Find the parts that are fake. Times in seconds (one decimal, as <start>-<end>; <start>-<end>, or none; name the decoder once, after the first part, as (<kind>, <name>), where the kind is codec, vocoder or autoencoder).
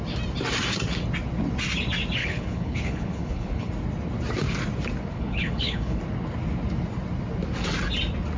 2.2-3.7 (codec, HILCodec); 5.1-6.0